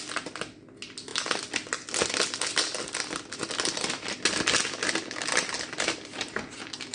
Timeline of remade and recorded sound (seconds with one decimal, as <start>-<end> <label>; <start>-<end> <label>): 0.0-6.9 recorded